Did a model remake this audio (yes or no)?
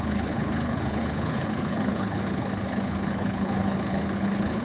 yes